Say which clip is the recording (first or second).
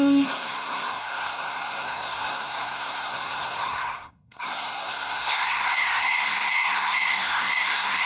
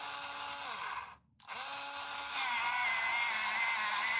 second